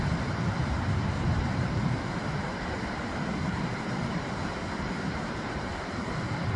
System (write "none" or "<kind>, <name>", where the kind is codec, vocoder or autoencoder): vocoder, BigVGAN v2